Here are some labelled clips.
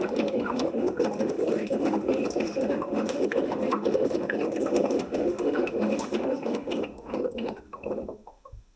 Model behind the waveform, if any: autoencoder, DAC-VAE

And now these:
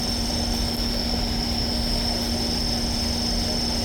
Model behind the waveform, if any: none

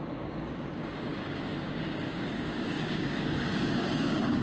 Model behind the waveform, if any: codec, DAC